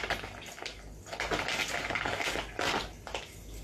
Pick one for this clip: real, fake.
real